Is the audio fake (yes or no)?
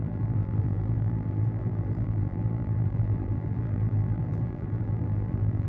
yes